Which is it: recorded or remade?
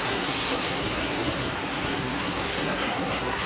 remade